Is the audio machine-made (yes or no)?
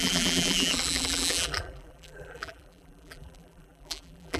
yes